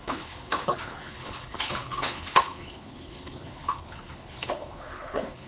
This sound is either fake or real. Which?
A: fake